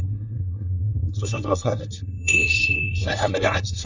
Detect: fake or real fake